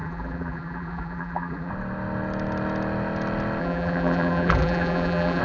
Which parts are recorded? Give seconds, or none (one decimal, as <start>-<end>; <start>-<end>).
1.7-3.6